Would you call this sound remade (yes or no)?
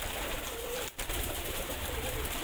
yes